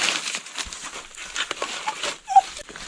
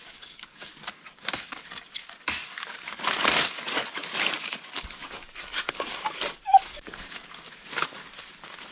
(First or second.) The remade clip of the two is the second